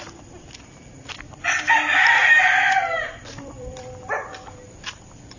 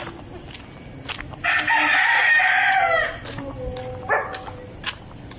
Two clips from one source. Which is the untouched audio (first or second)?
second